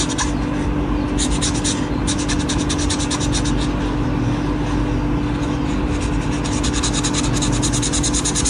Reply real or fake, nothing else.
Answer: real